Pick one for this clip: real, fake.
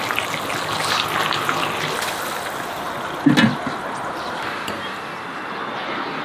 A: real